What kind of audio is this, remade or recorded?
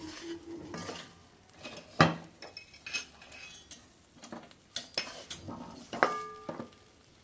recorded